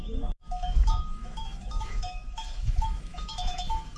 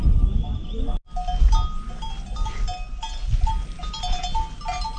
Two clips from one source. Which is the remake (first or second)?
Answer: first